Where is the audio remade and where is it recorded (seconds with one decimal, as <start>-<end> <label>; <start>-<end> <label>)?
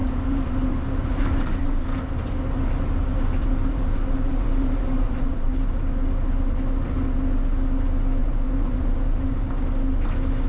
0.0-2.0 remade; 2.0-3.1 recorded; 3.1-5.7 remade; 5.7-8.2 recorded; 8.2-9.5 remade; 9.5-10.5 recorded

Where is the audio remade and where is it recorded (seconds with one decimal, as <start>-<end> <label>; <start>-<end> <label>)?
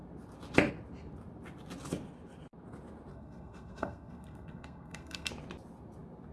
0.0-3.1 recorded; 3.1-5.3 remade; 5.3-6.3 recorded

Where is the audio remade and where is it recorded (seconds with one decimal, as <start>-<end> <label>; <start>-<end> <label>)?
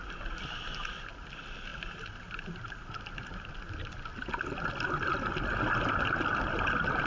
0.0-7.1 recorded